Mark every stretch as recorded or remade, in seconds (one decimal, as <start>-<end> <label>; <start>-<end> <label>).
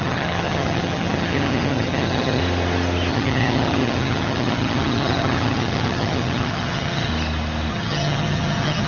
0.0-2.4 remade; 2.4-3.1 recorded; 3.1-7.1 remade; 7.1-7.7 recorded; 7.7-8.9 remade